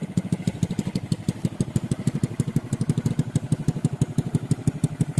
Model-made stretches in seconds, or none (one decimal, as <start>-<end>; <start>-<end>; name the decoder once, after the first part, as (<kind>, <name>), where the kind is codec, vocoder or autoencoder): 0.0-3.1 (vocoder, BigVGAN v2)